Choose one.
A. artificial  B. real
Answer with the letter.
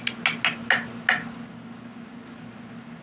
B